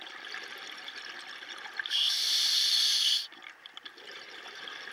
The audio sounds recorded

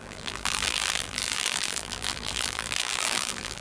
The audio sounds remade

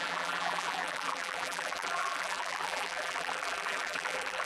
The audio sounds remade